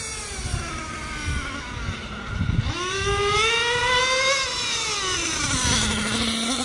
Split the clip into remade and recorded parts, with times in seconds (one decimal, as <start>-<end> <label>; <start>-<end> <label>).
0.0-6.6 recorded